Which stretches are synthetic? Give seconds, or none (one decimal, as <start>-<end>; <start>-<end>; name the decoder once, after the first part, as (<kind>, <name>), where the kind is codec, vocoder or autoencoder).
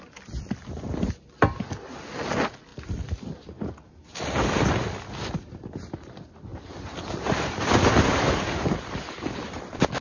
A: 2.7-4.0 (vocoder, BigVGAN v2); 6.5-7.8